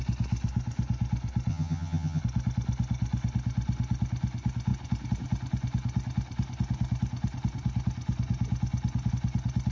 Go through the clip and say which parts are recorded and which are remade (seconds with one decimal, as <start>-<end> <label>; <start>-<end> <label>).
0.0-1.5 recorded; 1.5-2.2 remade; 2.2-9.7 recorded